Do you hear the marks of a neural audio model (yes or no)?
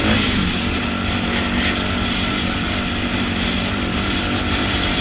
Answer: no